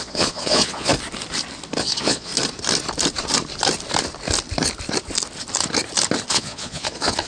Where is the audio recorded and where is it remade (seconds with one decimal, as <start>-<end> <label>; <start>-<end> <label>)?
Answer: 0.0-0.9 remade; 0.9-1.8 recorded; 1.8-2.3 remade; 2.3-6.3 recorded; 6.3-7.3 remade